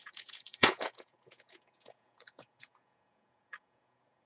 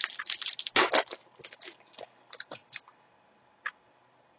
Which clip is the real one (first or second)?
second